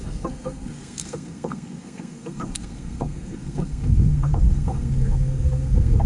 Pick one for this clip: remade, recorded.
remade